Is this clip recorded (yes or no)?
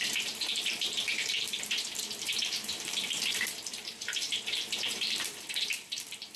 no